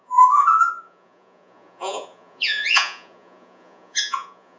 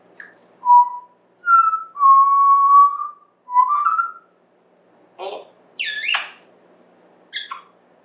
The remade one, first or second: first